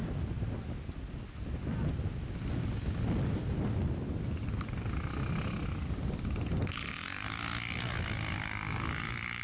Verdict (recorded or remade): recorded